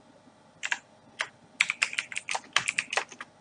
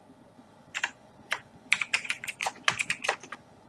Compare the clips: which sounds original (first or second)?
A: first